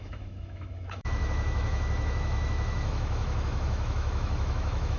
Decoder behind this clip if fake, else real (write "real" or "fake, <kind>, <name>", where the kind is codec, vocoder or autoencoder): fake, autoencoder, DAC-VAE